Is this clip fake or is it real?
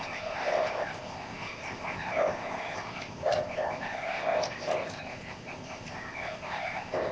fake